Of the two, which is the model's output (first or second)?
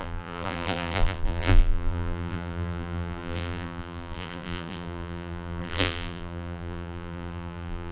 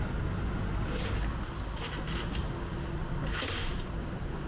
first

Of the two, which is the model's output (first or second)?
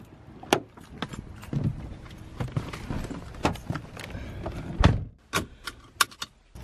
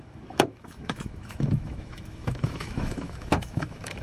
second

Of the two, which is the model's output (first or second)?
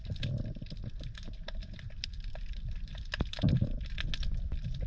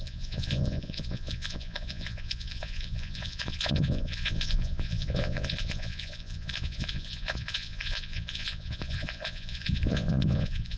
second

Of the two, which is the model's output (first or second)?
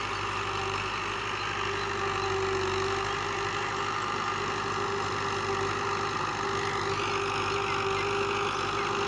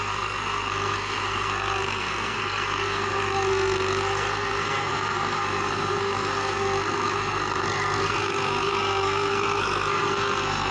second